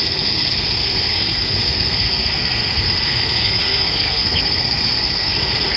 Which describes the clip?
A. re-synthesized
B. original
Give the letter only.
A